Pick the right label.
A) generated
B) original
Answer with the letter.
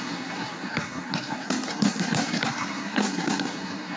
A